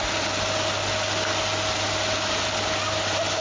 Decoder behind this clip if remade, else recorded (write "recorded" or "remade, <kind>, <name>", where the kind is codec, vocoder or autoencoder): recorded